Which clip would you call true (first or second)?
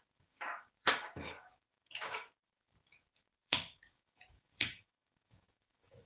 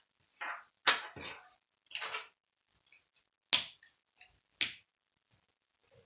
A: second